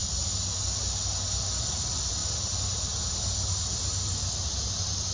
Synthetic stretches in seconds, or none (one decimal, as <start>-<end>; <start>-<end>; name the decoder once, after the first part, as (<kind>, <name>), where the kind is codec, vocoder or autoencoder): none